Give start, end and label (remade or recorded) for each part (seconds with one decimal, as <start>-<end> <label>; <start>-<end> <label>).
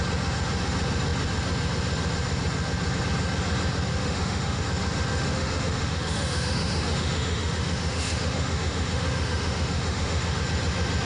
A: 0.0-3.9 recorded; 3.9-4.6 remade; 4.6-5.1 recorded; 5.1-10.4 remade; 10.4-11.1 recorded